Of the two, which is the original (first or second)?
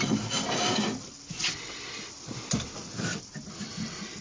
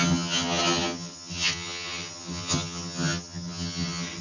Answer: first